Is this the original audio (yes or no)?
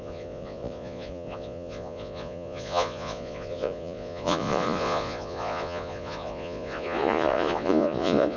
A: no